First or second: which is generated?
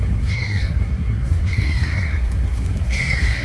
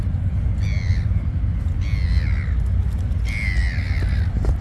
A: first